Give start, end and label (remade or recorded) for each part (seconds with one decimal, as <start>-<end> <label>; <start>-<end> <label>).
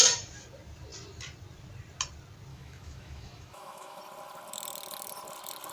0.0-2.5 recorded; 2.5-4.0 remade; 4.0-5.7 recorded